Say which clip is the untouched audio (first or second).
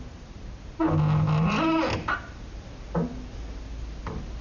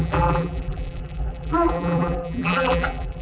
first